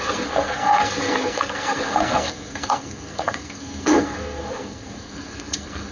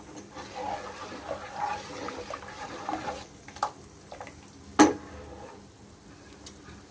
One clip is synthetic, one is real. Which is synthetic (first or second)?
first